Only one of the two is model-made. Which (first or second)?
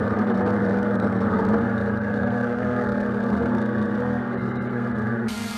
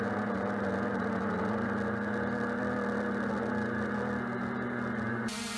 first